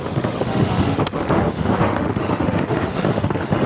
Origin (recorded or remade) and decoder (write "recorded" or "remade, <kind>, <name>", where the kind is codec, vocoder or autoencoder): remade, autoencoder, DAC-VAE